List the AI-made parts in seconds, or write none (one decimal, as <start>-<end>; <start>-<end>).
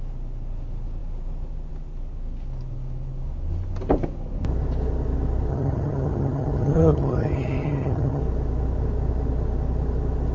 5.5-8.2